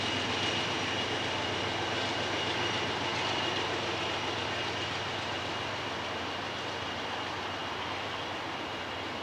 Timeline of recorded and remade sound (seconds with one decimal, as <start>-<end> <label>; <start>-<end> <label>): 0.0-9.2 recorded